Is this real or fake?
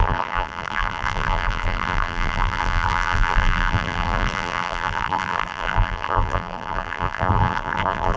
fake